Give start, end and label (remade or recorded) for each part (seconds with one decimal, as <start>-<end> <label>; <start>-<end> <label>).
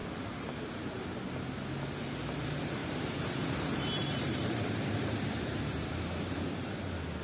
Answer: 0.0-1.0 remade; 1.0-2.8 recorded; 2.8-6.8 remade; 6.8-7.2 recorded